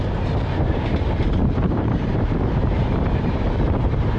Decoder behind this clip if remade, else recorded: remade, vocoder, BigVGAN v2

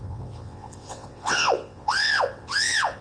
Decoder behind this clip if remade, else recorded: remade, vocoder, WaveNeXt